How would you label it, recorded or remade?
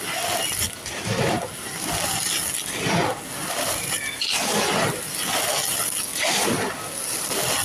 recorded